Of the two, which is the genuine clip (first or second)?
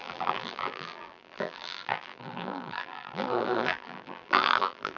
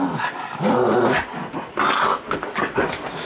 second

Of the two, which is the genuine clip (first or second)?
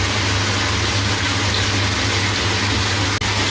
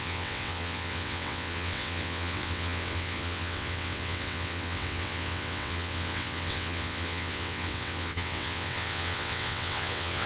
first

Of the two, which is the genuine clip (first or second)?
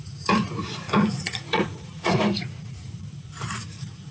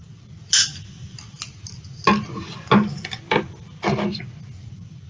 second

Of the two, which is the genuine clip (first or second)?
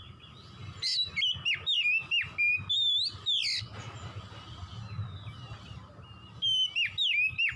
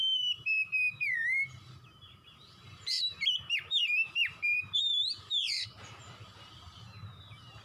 first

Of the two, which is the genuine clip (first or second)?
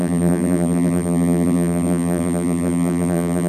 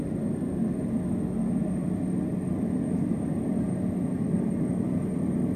second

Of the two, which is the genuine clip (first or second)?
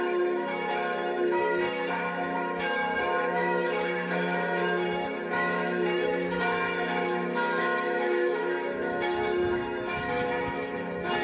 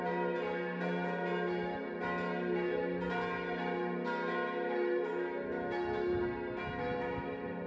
second